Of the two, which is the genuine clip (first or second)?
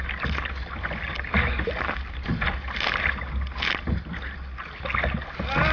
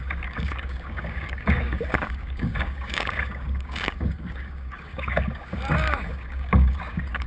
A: first